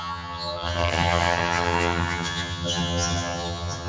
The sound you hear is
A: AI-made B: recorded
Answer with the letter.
A